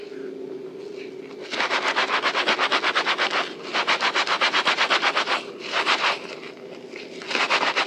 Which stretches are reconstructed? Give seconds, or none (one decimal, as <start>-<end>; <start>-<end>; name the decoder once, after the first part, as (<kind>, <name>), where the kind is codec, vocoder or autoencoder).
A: 3.7-6.3 (vocoder, BigVGAN v2)